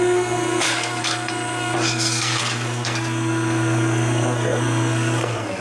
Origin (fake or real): fake